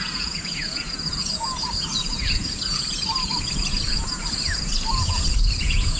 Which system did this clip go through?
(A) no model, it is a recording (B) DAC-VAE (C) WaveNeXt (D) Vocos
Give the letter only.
D